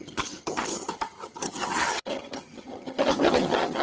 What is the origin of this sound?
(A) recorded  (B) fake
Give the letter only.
B